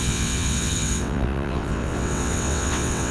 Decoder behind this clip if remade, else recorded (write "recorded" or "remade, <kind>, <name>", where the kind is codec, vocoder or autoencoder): remade, vocoder, WaveNeXt